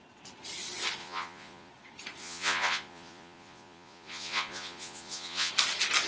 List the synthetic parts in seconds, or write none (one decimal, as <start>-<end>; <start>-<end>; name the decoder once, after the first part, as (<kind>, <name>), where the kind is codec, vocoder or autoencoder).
1.0-1.7 (vocoder, Vocos); 2.2-5.5